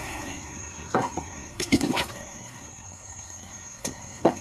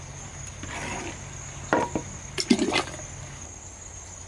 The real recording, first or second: second